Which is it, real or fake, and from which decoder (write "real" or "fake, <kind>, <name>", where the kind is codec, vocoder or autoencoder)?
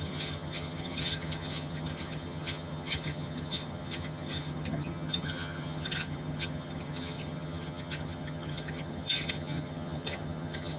fake, vocoder, HiFi-GAN